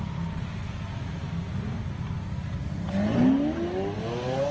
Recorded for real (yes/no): yes